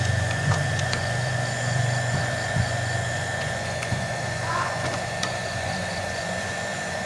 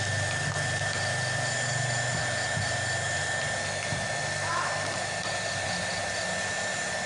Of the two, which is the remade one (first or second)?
first